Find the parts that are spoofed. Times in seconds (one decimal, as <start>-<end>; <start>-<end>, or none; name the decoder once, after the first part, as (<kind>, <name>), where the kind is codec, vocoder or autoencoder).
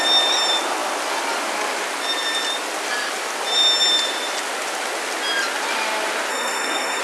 6.3-7.0 (codec, SNAC)